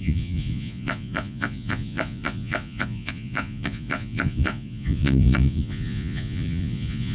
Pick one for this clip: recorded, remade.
remade